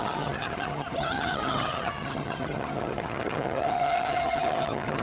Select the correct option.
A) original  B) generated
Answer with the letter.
B